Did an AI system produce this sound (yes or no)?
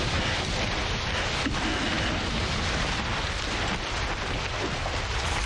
no